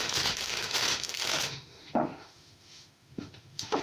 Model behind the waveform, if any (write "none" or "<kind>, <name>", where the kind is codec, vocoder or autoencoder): autoencoder, DAC-VAE